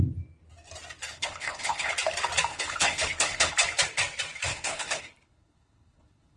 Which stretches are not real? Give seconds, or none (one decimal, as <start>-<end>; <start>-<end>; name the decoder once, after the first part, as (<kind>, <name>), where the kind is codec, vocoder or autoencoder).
1.1-1.9 (codec, HILCodec); 2.5-3.5; 4.5-6.4